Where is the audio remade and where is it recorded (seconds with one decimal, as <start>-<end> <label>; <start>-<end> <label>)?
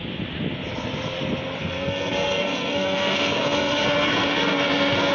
0.0-1.6 recorded; 1.6-5.1 remade